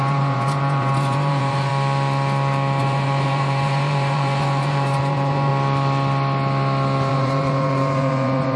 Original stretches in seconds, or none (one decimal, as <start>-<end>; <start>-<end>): 1.7-2.8; 5.5-7.1